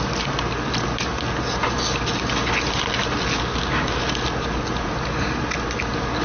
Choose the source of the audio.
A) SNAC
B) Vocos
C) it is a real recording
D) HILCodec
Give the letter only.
C